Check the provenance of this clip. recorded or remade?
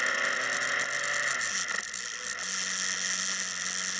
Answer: recorded